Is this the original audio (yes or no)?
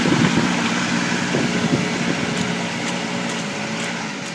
yes